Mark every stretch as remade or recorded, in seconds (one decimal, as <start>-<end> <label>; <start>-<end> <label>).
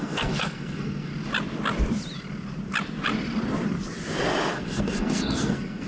0.0-1.1 remade; 1.1-4.5 recorded; 4.5-5.9 remade